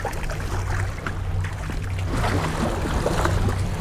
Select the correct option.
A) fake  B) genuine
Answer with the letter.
B